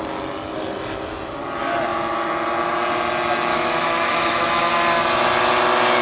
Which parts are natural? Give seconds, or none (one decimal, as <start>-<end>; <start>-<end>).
0.0-3.5; 4.6-6.0

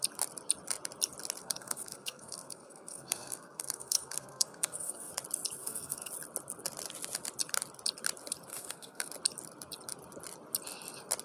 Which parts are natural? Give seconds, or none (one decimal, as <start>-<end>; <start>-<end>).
0.0-1.4; 5.1-5.6; 6.1-8.5; 9.1-11.2

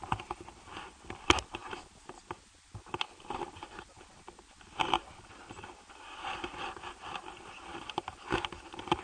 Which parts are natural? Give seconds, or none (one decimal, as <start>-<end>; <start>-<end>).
0.0-9.0